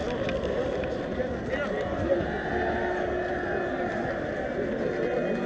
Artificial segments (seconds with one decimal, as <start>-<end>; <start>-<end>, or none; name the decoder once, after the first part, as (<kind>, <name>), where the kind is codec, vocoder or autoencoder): none